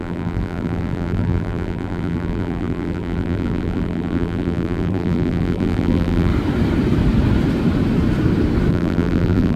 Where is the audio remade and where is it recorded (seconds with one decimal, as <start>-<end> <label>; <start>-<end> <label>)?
0.0-6.3 remade; 6.3-8.7 recorded; 8.7-9.6 remade